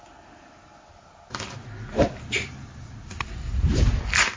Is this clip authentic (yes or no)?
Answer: yes